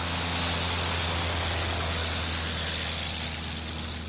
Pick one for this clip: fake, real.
real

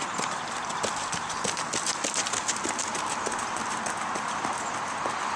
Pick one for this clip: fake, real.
real